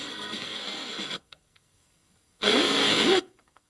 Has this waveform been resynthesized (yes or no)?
yes